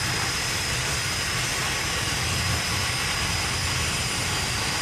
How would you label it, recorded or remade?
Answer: recorded